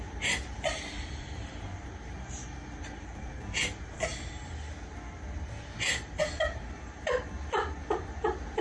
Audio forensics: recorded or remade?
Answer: remade